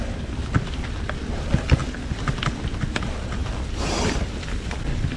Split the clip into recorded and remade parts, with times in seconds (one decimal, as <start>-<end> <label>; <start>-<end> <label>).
0.0-3.4 recorded; 3.4-4.7 remade; 4.7-5.2 recorded